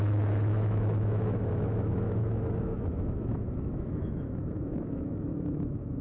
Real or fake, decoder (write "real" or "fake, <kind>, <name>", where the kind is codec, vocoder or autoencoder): fake, autoencoder, DAC-VAE